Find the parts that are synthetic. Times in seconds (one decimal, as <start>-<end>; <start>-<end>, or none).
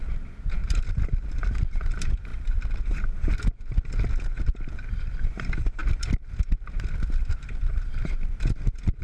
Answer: 0.0-2.3; 4.4-9.0